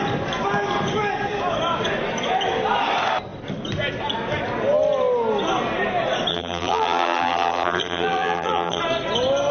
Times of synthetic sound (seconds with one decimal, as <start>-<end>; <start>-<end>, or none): 6.3-8.8